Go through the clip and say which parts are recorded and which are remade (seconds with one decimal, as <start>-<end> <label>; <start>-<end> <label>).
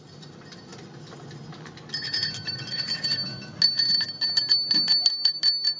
0.0-5.8 recorded